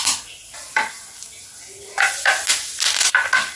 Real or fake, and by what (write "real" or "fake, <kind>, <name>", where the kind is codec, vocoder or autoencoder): real